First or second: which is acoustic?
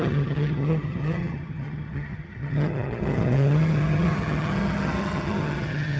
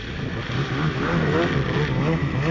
second